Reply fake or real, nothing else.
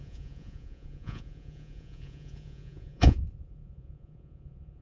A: fake